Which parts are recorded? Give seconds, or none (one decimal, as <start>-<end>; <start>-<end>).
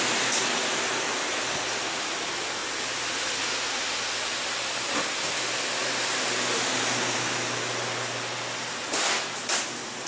0.0-10.1